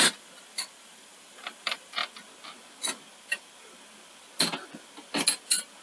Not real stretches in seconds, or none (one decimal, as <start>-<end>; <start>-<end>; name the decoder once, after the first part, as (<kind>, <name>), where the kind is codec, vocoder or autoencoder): 0.0-2.0 (vocoder, BigVGAN v2)

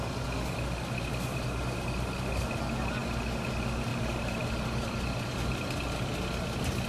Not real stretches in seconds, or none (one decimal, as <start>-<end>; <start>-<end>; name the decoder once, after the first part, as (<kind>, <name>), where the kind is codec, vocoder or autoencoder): 3.9-4.9 (vocoder, BigVGAN v2)